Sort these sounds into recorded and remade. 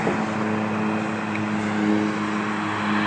recorded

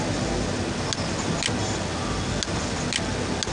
recorded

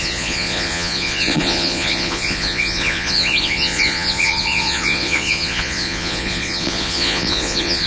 remade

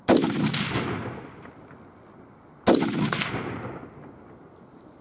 recorded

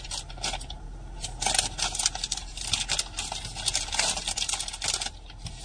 recorded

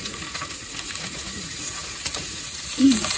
remade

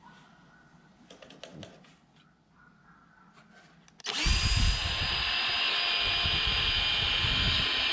recorded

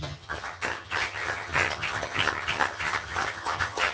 remade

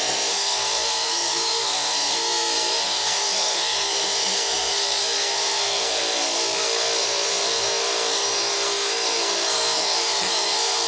remade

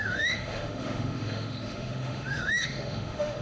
remade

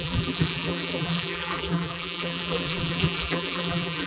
remade